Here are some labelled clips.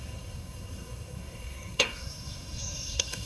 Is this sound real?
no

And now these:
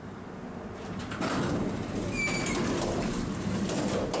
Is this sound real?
no